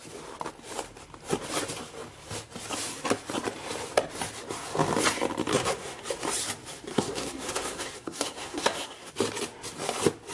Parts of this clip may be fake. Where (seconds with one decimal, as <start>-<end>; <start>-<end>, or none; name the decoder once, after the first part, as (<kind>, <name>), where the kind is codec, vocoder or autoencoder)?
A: 5.5-6.0 (codec, SNAC); 6.9-9.1